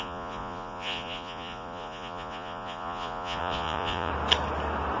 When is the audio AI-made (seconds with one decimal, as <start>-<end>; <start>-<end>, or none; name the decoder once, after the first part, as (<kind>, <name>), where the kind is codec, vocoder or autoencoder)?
0.0-4.1 (vocoder, Vocos)